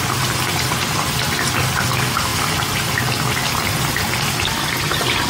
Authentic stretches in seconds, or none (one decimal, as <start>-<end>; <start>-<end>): 0.0-5.3